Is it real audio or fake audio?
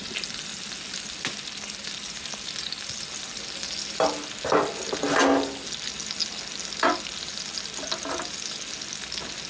real